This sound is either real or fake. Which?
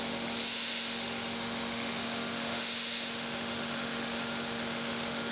fake